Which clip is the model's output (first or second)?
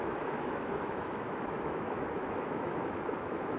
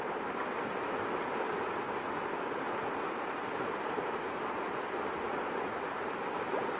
first